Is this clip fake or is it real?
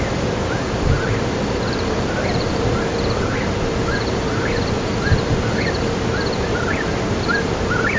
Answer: real